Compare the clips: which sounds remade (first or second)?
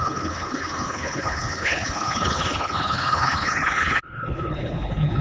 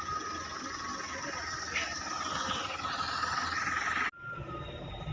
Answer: first